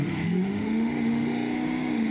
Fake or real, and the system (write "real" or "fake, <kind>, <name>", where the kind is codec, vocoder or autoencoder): fake, autoencoder, DAC-VAE